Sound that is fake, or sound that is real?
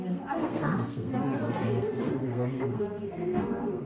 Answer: fake